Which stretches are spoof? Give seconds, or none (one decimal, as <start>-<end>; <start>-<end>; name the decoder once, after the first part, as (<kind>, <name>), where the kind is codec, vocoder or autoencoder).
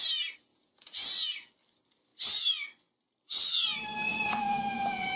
0.5-1.5 (vocoder, Vocos); 4.1-5.2